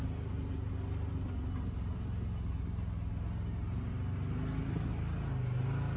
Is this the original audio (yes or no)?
yes